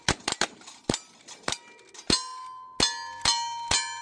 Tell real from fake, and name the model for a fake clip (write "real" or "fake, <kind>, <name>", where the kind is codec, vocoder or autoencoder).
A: real